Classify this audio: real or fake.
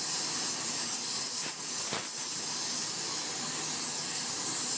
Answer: real